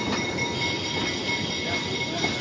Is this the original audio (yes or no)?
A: yes